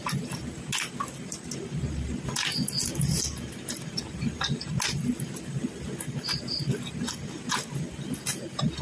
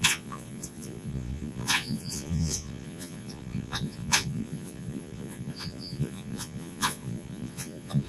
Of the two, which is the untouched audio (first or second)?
first